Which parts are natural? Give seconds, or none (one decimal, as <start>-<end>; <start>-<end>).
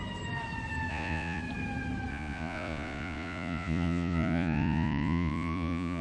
0.0-0.9; 1.4-2.1